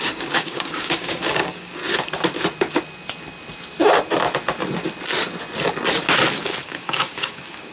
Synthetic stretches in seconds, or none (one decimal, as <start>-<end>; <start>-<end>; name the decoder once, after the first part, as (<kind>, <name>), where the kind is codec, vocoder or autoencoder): 0.0-1.8 (codec, DAC); 6.4-7.7